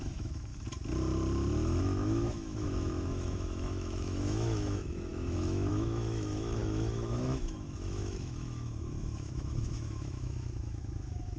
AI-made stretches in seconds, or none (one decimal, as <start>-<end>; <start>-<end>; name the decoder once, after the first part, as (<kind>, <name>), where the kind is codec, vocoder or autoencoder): 0.0-0.5 (autoencoder, DAC-VAE); 1.8-11.4